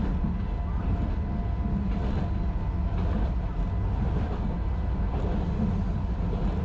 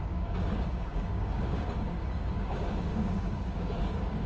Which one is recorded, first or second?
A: first